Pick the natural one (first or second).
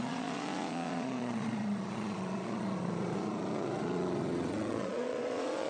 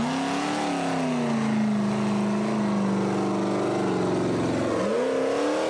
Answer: second